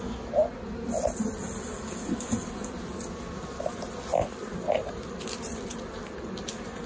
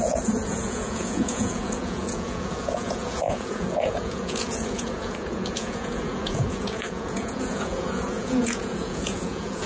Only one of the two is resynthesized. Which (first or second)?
second